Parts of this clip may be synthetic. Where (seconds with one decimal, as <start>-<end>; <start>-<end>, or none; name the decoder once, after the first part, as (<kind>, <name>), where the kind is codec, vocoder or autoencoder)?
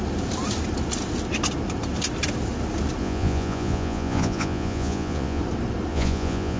3.0-5.4 (vocoder, Vocos); 5.9-6.6